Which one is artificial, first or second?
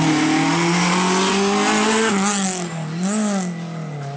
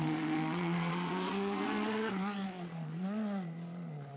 second